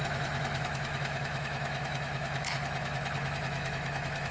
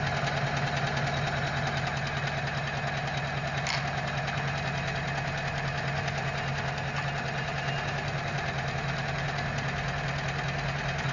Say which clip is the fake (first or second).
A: first